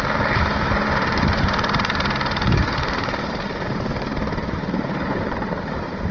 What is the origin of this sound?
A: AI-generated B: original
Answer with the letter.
A